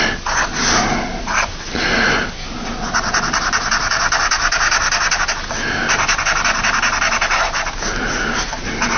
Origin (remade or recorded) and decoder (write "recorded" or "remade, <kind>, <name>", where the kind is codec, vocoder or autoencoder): recorded